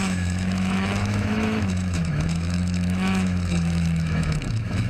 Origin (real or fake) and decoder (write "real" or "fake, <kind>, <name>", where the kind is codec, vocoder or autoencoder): fake, autoencoder, DAC-VAE